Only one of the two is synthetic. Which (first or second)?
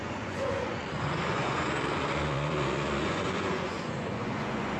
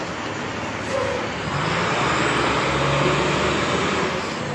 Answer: first